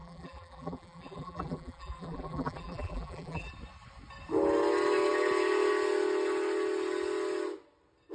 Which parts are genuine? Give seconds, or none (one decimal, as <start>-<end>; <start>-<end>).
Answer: 3.5-8.1